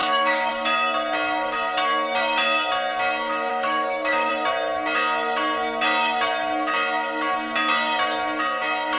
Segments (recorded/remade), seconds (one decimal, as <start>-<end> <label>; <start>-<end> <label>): 0.0-0.5 remade; 0.5-3.5 recorded; 3.5-4.3 remade; 4.3-9.0 recorded